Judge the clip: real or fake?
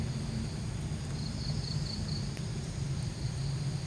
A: real